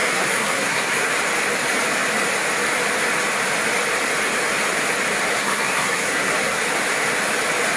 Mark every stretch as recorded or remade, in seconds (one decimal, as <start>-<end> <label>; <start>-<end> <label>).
0.0-1.1 remade; 1.1-5.3 recorded; 5.3-6.6 remade; 6.6-7.8 recorded